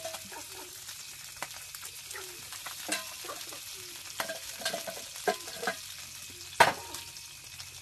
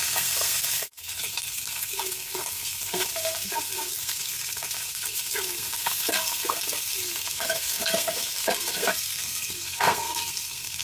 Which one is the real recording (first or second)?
first